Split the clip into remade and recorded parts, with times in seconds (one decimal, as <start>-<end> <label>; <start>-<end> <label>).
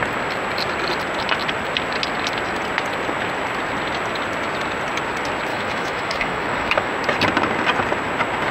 0.0-5.5 recorded; 5.5-6.9 remade; 6.9-8.5 recorded